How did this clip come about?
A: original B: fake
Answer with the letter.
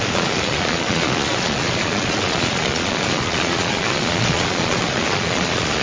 B